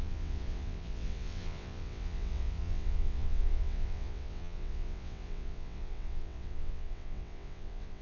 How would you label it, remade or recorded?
remade